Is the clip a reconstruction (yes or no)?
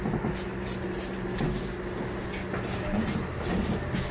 no